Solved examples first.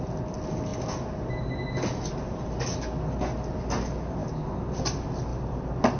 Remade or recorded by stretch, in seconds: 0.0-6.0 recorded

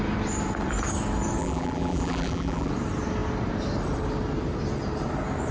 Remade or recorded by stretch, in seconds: 0.0-1.4 recorded; 1.4-2.7 remade; 2.7-5.5 recorded

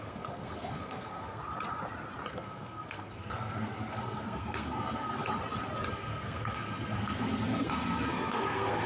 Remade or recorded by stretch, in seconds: 0.0-1.4 remade; 1.4-2.3 recorded; 2.3-5.1 remade; 5.1-5.9 recorded; 5.9-8.9 remade

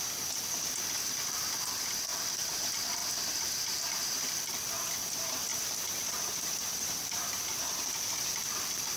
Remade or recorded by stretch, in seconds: 0.0-2.1 recorded; 2.1-2.6 remade; 2.6-5.5 recorded; 5.5-8.3 remade; 8.3-9.0 recorded

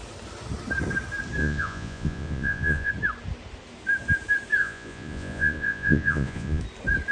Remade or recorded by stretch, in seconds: 0.0-1.4 recorded; 1.4-2.9 remade; 2.9-4.6 recorded; 4.6-6.6 remade; 6.6-7.1 recorded

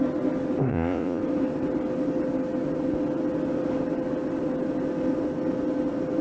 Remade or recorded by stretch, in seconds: 0.0-0.7 recorded; 0.7-1.2 remade; 1.2-6.2 recorded